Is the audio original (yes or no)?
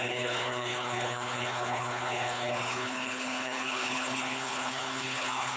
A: no